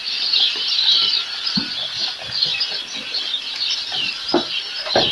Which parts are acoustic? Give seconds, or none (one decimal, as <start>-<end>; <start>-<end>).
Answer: 0.8-5.1